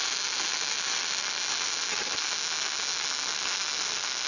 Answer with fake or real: real